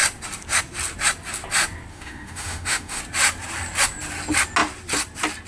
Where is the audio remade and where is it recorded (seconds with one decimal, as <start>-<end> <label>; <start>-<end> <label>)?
0.0-1.9 recorded; 1.9-3.0 remade; 3.0-5.5 recorded